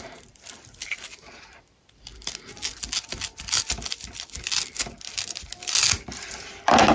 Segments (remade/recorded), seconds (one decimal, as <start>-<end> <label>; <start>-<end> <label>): 0.0-2.1 remade; 2.1-6.2 recorded; 6.2-6.9 remade